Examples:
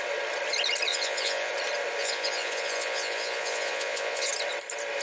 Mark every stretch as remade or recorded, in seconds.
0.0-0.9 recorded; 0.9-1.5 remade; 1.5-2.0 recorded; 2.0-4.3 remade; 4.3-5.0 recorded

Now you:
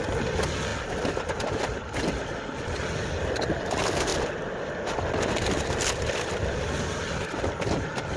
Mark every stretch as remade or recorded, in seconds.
0.0-8.2 recorded

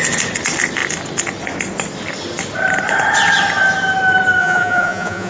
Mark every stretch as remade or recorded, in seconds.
0.0-4.4 recorded; 4.4-5.3 remade

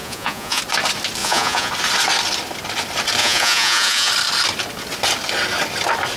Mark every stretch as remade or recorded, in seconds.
0.0-0.6 remade; 0.6-1.2 recorded; 1.2-1.7 remade; 1.7-3.2 recorded; 3.2-4.1 remade; 4.1-6.2 recorded